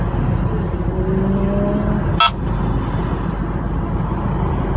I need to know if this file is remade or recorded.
recorded